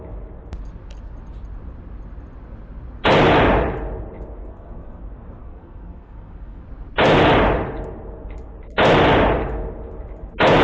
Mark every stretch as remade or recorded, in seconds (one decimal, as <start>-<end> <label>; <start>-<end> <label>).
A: 0.0-4.4 recorded; 4.4-5.0 remade; 5.0-5.4 recorded; 5.4-6.6 remade; 6.6-10.6 recorded